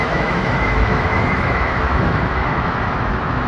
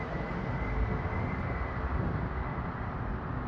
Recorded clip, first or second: second